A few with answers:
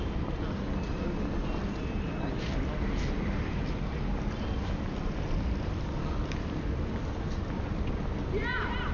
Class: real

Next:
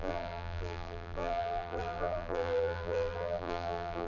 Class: fake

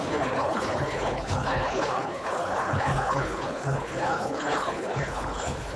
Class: fake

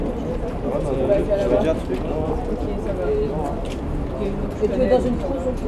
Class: real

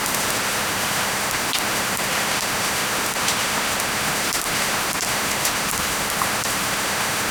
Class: fake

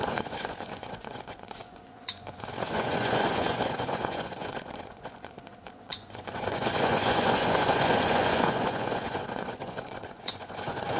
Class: fake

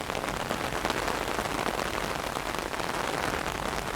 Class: real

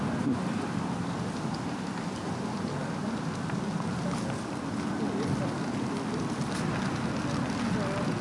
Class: real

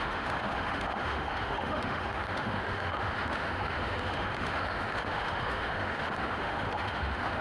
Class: fake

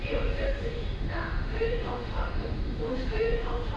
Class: fake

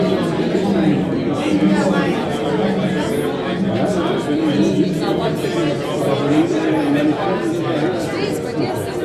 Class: real